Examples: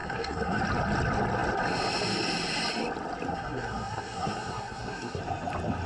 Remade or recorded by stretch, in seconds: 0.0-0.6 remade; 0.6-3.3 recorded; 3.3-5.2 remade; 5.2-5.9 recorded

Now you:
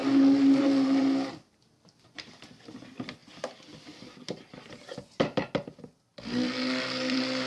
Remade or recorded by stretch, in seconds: 0.0-7.5 recorded

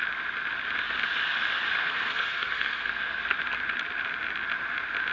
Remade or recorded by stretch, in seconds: 0.0-1.8 recorded; 1.8-3.2 remade; 3.2-5.1 recorded

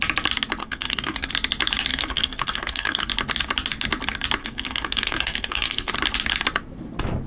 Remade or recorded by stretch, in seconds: 0.0-0.6 recorded; 0.6-1.3 remade; 1.3-1.9 recorded; 1.9-3.1 remade; 3.1-4.4 recorded; 4.4-5.9 remade; 5.9-7.3 recorded